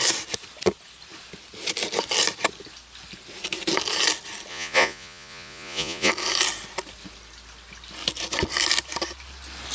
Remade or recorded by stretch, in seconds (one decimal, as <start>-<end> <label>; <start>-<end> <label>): 0.0-4.5 recorded; 4.5-6.1 remade; 6.1-9.7 recorded